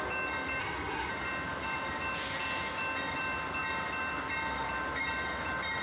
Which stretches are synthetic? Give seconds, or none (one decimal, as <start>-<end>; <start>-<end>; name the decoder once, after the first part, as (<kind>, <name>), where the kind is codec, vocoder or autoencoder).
0.6-1.1 (codec, SNAC)